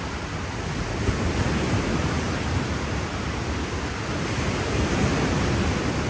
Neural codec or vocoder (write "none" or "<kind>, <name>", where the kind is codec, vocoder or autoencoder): none